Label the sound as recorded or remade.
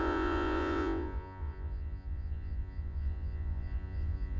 remade